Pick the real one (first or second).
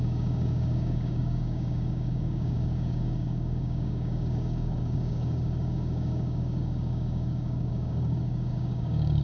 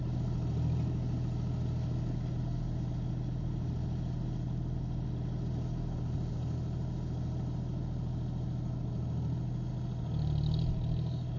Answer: second